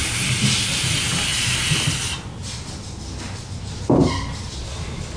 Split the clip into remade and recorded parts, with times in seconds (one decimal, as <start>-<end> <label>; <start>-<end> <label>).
0.0-5.2 recorded